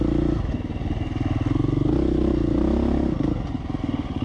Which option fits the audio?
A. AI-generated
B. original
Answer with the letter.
B